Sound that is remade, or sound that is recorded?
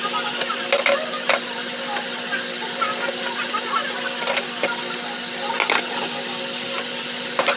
recorded